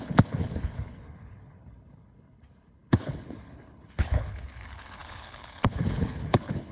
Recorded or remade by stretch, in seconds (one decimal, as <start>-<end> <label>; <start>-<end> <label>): 0.0-6.7 remade